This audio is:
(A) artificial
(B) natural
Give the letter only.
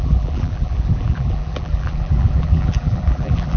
A